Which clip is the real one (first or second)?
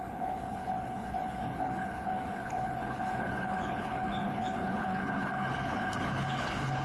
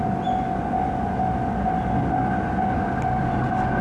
second